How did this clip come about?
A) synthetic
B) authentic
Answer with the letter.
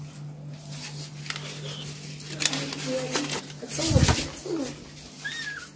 B